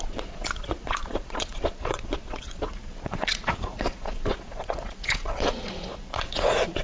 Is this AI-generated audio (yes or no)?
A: yes